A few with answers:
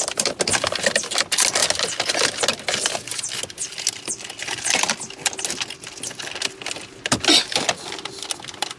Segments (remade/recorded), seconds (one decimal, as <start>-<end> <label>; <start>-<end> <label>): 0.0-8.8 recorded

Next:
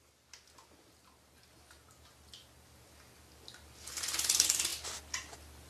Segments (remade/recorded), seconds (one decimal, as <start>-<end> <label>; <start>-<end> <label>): 0.0-5.7 recorded

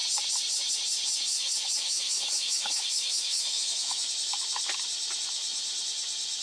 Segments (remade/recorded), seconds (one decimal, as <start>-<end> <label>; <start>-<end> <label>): 0.0-1.3 recorded; 1.3-4.1 remade; 4.1-6.4 recorded

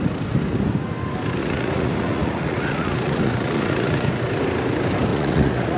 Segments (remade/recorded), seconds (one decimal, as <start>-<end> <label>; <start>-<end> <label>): 0.0-1.4 recorded; 1.4-4.1 remade; 4.1-5.1 recorded; 5.1-5.8 remade

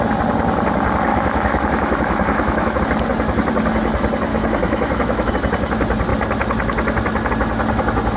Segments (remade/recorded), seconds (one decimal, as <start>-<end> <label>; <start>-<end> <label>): 0.0-1.1 recorded; 1.1-2.8 remade; 2.8-4.3 recorded; 4.3-5.3 remade; 5.3-8.2 recorded

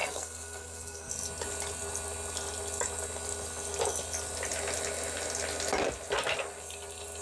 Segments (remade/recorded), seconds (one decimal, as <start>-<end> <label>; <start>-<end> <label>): 0.0-1.1 remade; 1.1-7.2 recorded

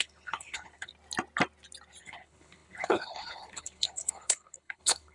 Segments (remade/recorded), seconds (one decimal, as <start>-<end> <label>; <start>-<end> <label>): 0.0-0.9 remade; 0.9-2.0 recorded; 2.0-5.1 remade